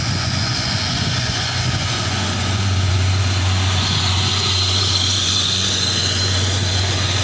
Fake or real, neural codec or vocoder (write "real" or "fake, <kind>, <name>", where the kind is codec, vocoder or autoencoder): fake, vocoder, Vocos